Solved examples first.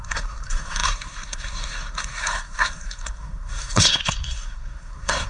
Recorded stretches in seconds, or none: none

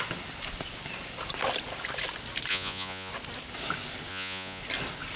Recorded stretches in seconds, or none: 0.0-2.5; 3.1-4.1; 4.6-5.2